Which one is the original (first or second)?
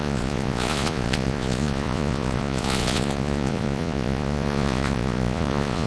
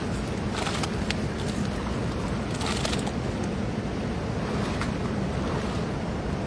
second